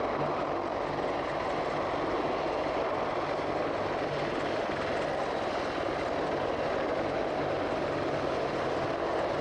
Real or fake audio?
real